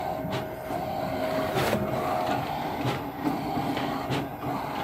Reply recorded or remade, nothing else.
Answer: recorded